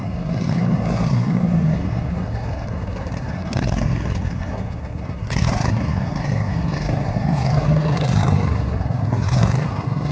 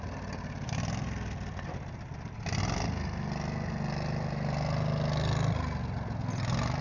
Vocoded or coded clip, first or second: first